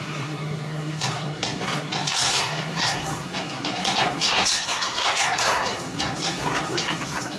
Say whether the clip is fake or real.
fake